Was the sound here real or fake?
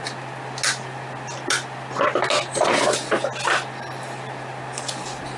real